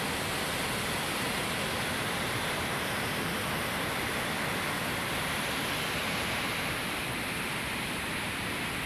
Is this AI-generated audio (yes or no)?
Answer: yes